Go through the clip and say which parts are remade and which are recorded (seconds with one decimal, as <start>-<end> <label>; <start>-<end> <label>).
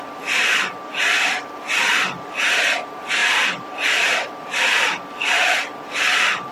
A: 0.0-3.2 recorded; 3.2-6.5 remade